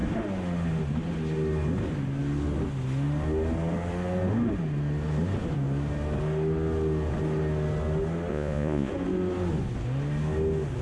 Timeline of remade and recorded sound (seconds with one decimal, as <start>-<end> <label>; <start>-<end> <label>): 0.0-8.3 recorded; 8.3-8.9 remade; 8.9-10.8 recorded